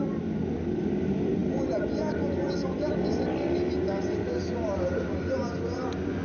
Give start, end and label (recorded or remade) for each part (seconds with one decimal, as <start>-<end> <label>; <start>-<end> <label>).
0.0-6.2 recorded